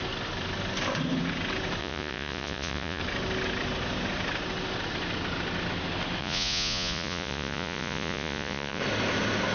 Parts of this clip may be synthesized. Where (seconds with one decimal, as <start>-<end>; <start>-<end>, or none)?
1.8-3.0; 6.2-8.8